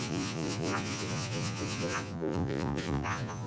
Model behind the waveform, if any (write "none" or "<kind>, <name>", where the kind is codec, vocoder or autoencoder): vocoder, Vocos